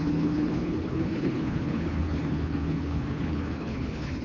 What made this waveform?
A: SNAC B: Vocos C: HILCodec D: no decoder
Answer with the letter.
C